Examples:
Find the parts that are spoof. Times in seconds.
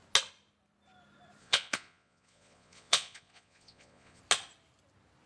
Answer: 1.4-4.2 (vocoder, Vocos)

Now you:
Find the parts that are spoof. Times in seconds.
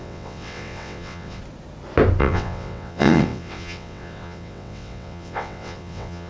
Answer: 0.0-1.4 (vocoder, WaveNeXt); 2.2-6.3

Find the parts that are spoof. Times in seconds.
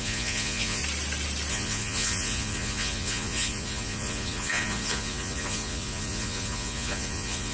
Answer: 0.0-0.8 (vocoder, Vocos); 1.5-7.5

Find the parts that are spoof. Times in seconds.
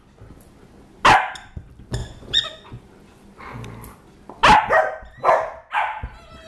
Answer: 2.0-2.8 (vocoder, Vocos)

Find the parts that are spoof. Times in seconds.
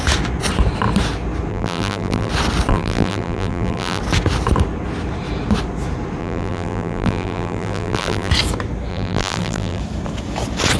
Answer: 1.5-2.3 (vocoder, BigVGAN v2); 2.7-4.0; 6.2-8.3; 8.9-9.8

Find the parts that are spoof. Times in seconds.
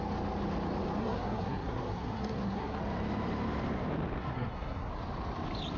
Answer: 1.0-2.8 (codec, SNAC); 4.2-4.9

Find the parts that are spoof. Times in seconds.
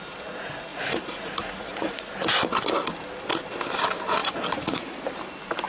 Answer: 0.7-2.1 (vocoder, Vocos); 4.2-5.0